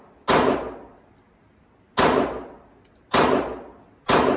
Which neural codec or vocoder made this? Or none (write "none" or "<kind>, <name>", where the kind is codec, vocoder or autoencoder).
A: none